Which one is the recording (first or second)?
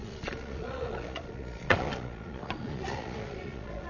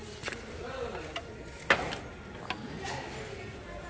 second